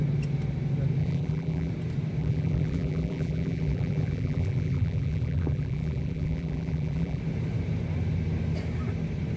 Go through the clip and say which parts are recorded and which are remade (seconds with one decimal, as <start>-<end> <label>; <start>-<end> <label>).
0.0-1.0 recorded; 1.0-1.7 remade; 1.7-2.2 recorded; 2.2-7.2 remade; 7.2-9.4 recorded